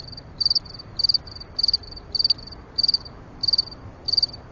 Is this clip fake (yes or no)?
yes